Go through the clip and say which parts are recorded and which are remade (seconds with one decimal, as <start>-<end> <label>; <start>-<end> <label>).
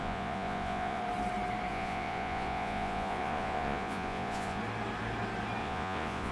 0.0-1.0 remade; 1.0-1.7 recorded; 1.7-4.6 remade; 4.6-5.6 recorded; 5.6-6.3 remade